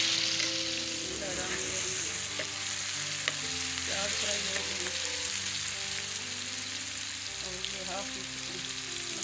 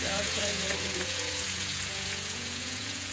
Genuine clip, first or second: first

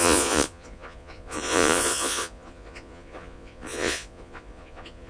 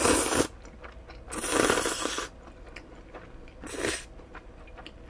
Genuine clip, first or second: second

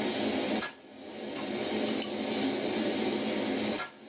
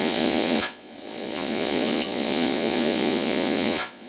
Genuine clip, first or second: first